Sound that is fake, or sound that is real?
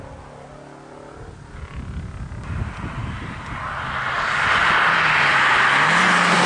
real